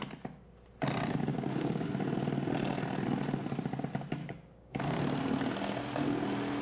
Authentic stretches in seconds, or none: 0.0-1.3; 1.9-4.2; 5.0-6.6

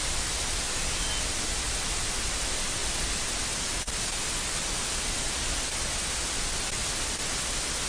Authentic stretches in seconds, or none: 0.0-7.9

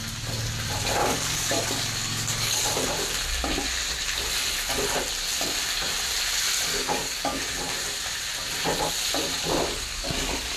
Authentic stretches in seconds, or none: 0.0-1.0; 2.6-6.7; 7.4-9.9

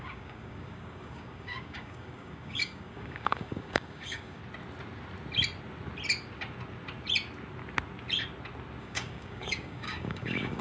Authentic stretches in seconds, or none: 4.4-8.8